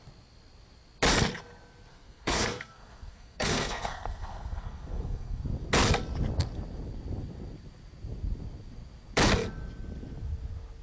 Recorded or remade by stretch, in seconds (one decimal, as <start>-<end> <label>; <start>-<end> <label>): 0.0-1.9 recorded; 1.9-5.4 remade; 5.4-10.8 recorded